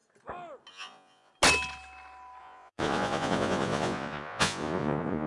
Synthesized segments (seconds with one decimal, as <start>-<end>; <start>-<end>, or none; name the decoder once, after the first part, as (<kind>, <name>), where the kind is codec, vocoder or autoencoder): 0.7-1.3 (vocoder, Vocos); 2.4-5.3